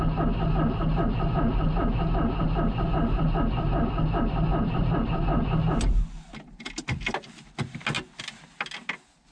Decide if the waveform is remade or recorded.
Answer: recorded